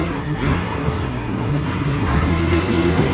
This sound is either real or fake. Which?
fake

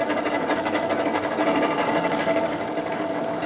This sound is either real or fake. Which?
fake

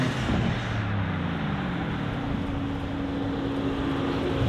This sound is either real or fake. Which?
real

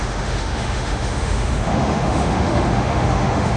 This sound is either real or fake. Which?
fake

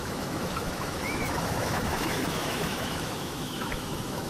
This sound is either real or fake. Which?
fake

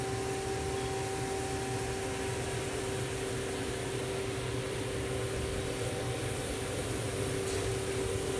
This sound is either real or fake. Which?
real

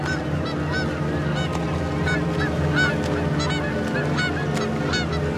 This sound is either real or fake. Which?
real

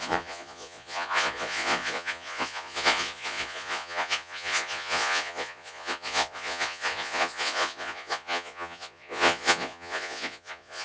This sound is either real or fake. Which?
fake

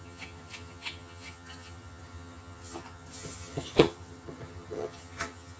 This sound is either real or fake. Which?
fake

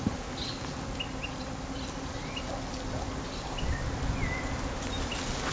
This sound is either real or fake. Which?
real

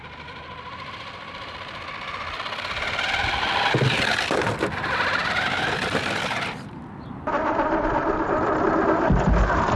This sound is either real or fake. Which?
real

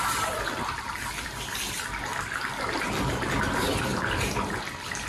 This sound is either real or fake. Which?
fake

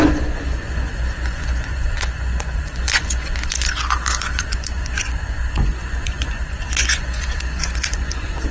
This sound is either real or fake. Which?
fake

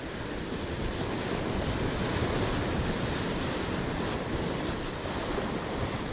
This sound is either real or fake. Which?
real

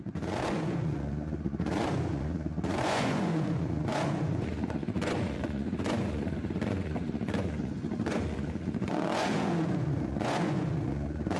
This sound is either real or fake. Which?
fake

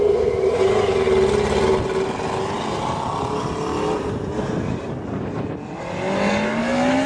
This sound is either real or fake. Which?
real